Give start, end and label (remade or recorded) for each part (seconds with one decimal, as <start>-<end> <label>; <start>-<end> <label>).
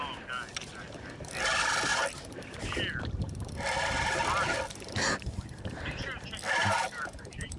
0.0-6.6 recorded; 6.6-7.6 remade